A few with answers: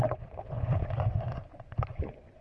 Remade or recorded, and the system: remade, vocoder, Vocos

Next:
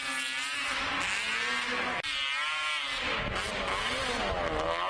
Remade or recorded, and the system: recorded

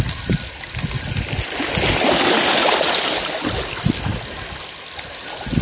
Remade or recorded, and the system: recorded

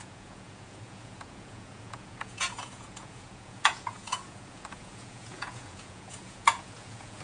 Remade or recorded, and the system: remade, vocoder, Vocos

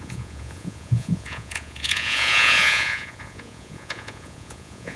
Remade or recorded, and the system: remade, vocoder, Vocos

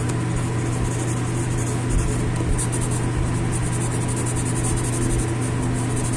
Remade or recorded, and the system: recorded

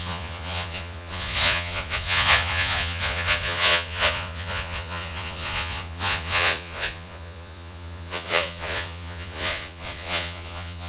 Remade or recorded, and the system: remade, vocoder, Vocos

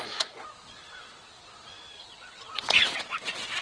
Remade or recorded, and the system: remade, vocoder, Vocos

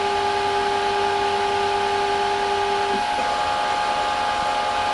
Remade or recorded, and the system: recorded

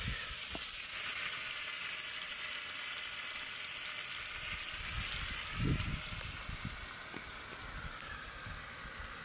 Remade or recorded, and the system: recorded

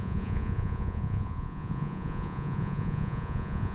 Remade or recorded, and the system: remade, vocoder, Vocos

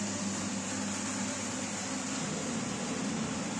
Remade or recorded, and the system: recorded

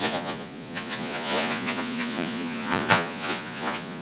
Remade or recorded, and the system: remade, vocoder, Vocos